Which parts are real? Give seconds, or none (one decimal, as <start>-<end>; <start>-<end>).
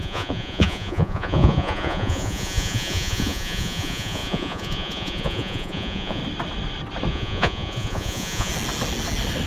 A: 6.2-7.1; 8.5-9.5